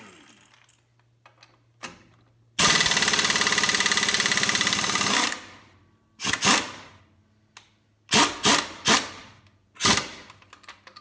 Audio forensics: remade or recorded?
recorded